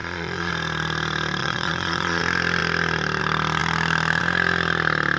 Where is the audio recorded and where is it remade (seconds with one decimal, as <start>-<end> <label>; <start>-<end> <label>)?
0.0-0.5 remade; 0.5-1.4 recorded; 1.4-2.2 remade; 2.2-5.2 recorded